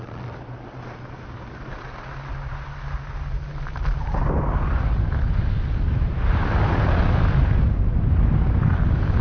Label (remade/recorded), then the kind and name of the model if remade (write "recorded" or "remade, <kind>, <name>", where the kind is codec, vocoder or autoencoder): recorded